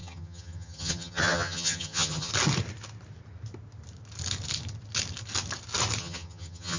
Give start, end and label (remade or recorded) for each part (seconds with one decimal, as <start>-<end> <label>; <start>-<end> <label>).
0.0-2.3 remade; 2.3-6.0 recorded; 6.0-6.8 remade